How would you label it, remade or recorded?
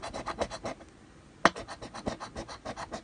recorded